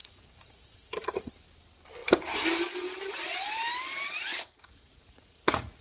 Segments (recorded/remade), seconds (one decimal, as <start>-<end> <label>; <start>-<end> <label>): 0.0-1.3 remade; 1.3-4.3 recorded; 4.3-5.8 remade